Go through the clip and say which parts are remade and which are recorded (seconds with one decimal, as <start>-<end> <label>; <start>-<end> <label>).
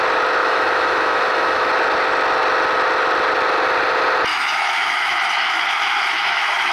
0.0-0.4 recorded; 0.4-1.7 remade; 1.7-4.3 recorded; 4.3-6.7 remade